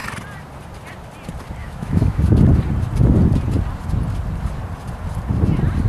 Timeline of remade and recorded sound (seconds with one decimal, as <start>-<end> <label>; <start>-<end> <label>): 0.0-1.6 recorded; 1.6-2.2 remade; 2.2-5.9 recorded